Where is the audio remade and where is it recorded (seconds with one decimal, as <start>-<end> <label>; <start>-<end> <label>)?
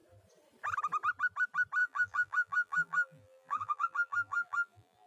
0.0-1.8 recorded; 1.8-5.1 remade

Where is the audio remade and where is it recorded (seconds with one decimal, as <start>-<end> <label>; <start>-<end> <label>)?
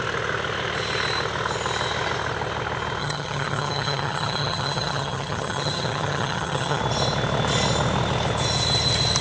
0.0-3.0 recorded; 3.0-6.8 remade; 6.8-9.2 recorded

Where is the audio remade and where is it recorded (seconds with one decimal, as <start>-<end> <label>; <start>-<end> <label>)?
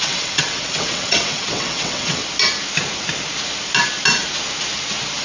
0.0-2.2 remade; 2.2-5.2 recorded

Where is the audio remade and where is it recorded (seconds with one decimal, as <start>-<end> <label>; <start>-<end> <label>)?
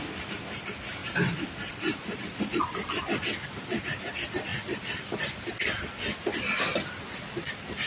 0.0-1.0 recorded; 1.0-3.1 remade; 3.1-7.9 recorded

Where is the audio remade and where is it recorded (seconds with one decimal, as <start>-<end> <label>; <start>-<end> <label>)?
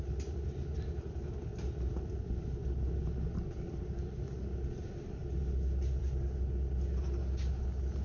0.0-8.0 recorded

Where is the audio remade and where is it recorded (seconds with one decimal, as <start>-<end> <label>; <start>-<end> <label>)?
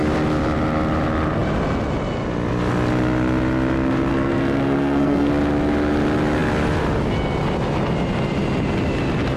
0.0-4.1 recorded; 4.1-5.3 remade; 5.3-9.4 recorded